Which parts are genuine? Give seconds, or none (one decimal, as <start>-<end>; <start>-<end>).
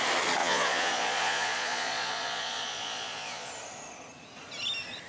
0.0-0.4; 3.5-5.1